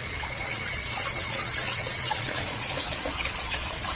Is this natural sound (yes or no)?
no